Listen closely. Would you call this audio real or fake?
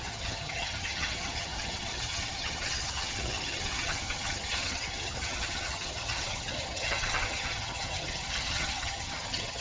fake